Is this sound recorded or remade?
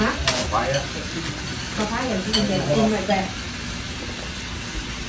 recorded